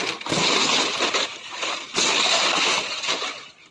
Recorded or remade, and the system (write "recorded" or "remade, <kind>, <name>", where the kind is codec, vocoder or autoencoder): recorded